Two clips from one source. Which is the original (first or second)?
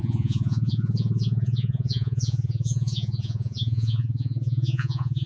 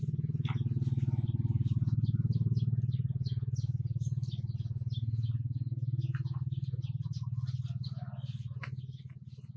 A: second